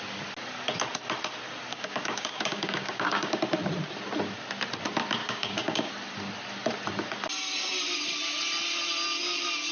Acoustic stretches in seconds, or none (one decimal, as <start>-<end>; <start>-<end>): 0.0-1.7; 3.4-5.2; 5.9-9.7